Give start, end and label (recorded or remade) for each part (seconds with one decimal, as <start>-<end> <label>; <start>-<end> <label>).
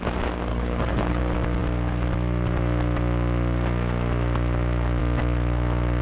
0.0-0.5 recorded; 0.5-1.2 remade; 1.2-6.0 recorded